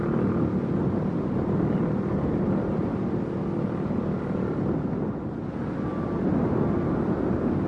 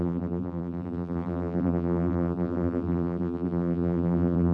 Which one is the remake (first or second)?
second